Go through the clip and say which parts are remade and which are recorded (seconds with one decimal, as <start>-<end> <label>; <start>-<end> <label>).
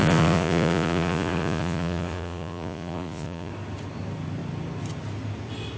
0.0-3.5 remade; 3.5-5.8 recorded